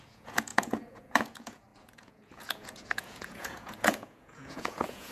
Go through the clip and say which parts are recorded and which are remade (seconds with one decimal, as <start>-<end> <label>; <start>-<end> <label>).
0.0-5.1 remade